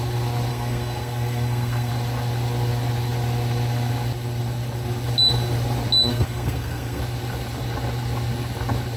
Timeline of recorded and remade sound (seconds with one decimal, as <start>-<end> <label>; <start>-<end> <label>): 0.0-0.5 recorded; 0.5-1.9 remade; 1.9-6.1 recorded; 6.1-7.0 remade; 7.0-9.0 recorded

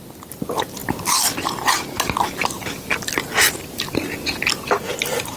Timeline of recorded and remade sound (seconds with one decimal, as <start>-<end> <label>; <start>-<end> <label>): 0.0-5.4 recorded

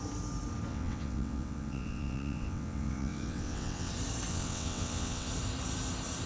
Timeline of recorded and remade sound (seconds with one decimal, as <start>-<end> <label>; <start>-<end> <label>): 0.0-0.7 recorded; 0.7-3.9 remade; 3.9-4.3 recorded; 4.3-5.3 remade; 5.3-6.3 recorded

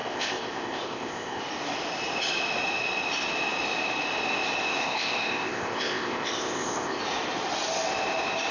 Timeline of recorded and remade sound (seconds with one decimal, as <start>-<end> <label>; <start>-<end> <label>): 0.0-1.4 remade; 1.4-4.8 recorded; 4.8-7.0 remade; 7.0-8.5 recorded